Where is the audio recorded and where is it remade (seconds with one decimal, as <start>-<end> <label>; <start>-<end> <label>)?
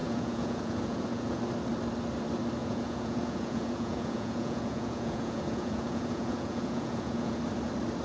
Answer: 0.0-1.4 remade; 1.4-2.6 recorded; 2.6-7.4 remade; 7.4-8.0 recorded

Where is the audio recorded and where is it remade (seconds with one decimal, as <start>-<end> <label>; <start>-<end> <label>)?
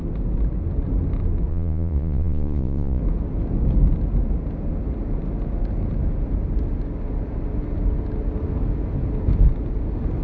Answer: 0.0-1.5 recorded; 1.5-3.0 remade; 3.0-10.2 recorded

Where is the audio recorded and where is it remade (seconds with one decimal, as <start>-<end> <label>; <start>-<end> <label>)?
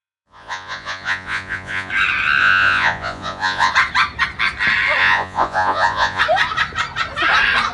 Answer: 0.0-1.9 remade; 1.9-2.4 recorded; 2.4-3.7 remade; 3.7-5.0 recorded; 5.0-6.2 remade; 6.2-7.7 recorded